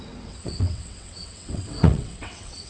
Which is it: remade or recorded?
remade